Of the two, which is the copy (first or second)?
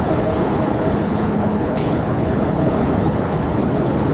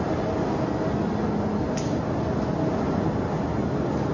first